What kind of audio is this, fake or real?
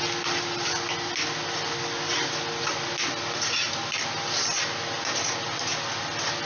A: real